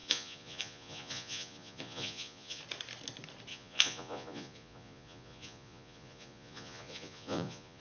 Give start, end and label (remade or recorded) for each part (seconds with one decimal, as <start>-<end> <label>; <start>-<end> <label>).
0.0-2.6 remade; 2.6-3.5 recorded; 3.5-7.8 remade